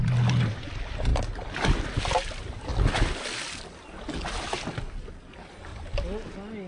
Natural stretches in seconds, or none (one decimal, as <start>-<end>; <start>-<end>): 0.0-6.7